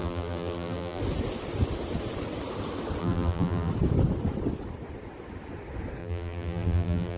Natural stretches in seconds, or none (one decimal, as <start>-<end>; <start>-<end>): 1.0-3.0; 3.7-6.0